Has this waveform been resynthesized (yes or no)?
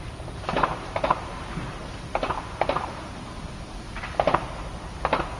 no